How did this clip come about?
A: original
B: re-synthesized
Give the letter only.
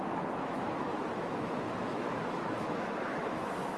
B